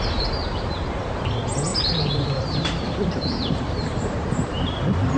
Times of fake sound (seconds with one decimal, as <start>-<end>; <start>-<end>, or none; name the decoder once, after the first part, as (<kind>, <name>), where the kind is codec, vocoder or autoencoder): 0.4-1.2 (vocoder, BigVGAN v2); 1.7-4.8